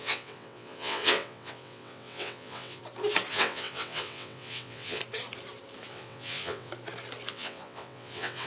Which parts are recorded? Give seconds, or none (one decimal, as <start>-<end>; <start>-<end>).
2.8-3.3; 5.0-5.9; 6.7-7.3